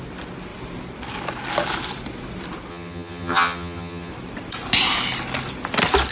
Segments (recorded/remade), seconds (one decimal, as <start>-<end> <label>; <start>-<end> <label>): 0.0-2.7 recorded; 2.7-4.1 remade; 4.1-6.1 recorded